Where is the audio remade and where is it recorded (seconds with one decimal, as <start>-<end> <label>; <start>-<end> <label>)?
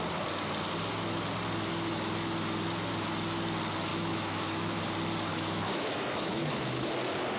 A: 0.0-3.9 recorded; 3.9-4.8 remade; 4.8-5.3 recorded; 5.3-6.9 remade; 6.9-7.4 recorded